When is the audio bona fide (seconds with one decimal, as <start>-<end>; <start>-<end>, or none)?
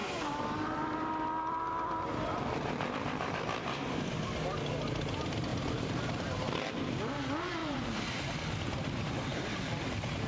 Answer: 4.0-5.5; 6.9-7.6; 8.3-9.3